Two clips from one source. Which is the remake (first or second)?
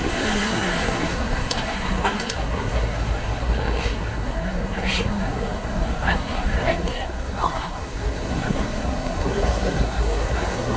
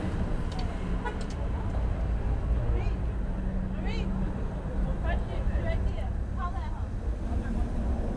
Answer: first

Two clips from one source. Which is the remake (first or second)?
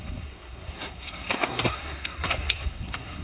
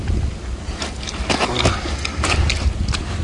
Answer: first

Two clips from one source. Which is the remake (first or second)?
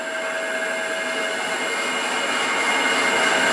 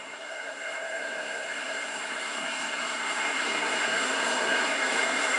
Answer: second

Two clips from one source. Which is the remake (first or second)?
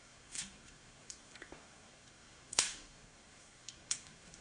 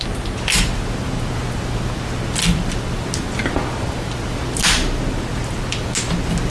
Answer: first